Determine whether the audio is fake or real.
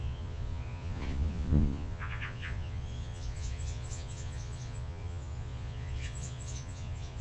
fake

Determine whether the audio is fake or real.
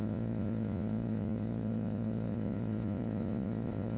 fake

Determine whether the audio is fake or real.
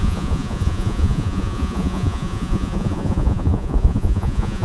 fake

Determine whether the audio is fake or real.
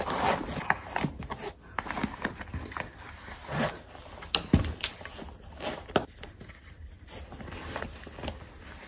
real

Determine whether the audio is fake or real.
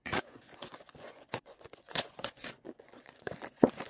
fake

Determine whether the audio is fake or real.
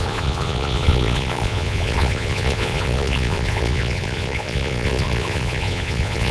fake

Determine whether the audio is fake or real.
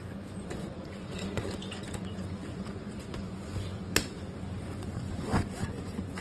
fake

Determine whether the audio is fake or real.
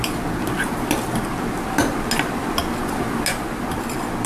real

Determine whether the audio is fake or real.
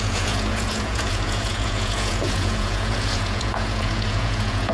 fake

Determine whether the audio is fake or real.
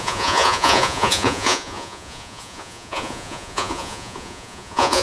fake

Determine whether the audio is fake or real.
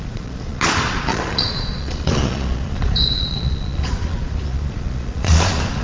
fake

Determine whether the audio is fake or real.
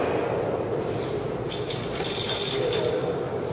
real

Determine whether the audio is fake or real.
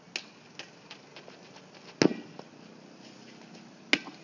real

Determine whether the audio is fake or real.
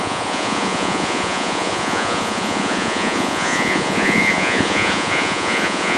fake